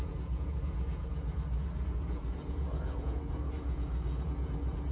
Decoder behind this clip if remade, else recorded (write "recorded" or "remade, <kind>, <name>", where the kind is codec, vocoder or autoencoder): remade, vocoder, Vocos